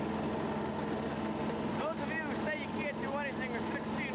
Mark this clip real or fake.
real